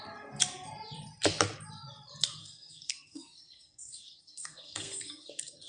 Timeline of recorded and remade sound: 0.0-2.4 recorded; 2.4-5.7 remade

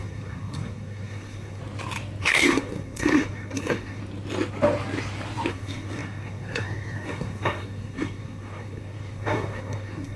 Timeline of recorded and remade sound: 0.0-1.6 remade; 1.6-2.2 recorded; 2.2-4.0 remade; 4.0-5.5 recorded; 5.5-10.2 remade

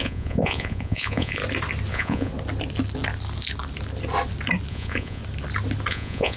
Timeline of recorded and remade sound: 0.0-1.4 remade; 1.4-1.9 recorded; 1.9-2.3 remade; 2.3-4.7 recorded; 4.7-5.2 remade; 5.2-5.9 recorded; 5.9-6.4 remade